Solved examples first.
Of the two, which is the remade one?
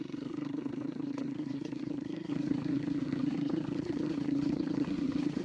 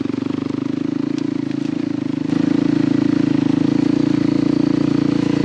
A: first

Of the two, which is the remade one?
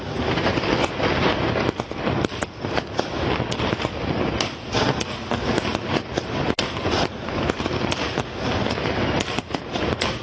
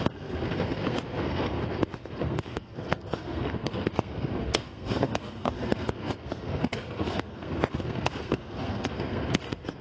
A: second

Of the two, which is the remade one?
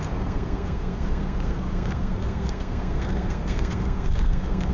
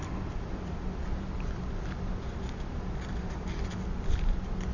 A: first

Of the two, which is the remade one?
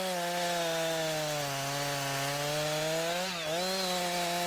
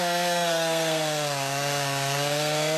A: second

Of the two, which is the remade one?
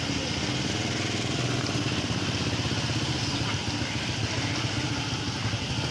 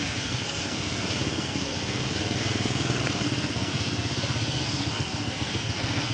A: second